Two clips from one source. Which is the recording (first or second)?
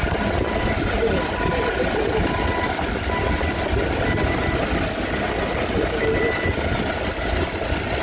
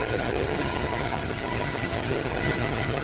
first